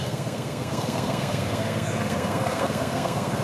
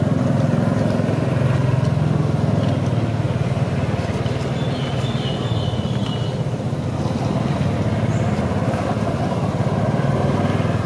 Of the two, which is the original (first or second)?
second